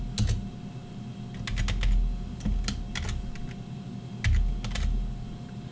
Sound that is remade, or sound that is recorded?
recorded